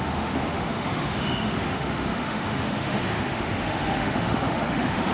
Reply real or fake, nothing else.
fake